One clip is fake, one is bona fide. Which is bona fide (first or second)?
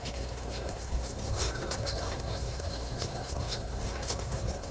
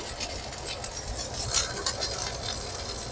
second